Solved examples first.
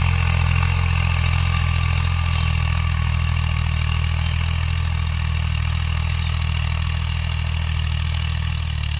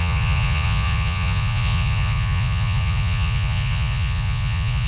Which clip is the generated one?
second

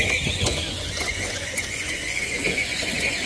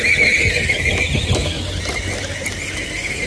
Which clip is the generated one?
first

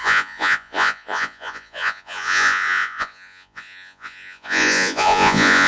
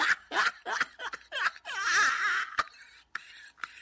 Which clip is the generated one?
first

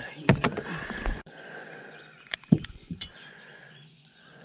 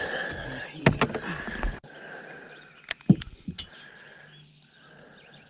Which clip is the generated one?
first